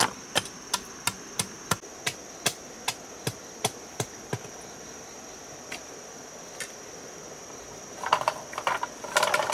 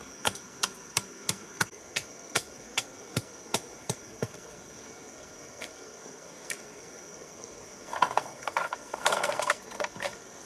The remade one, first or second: second